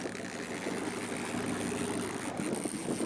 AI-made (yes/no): no